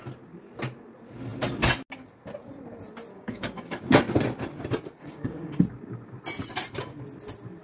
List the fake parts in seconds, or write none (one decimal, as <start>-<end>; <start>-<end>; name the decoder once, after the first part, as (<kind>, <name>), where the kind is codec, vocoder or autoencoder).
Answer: 3.1-4.0 (codec, DAC); 5.0-5.6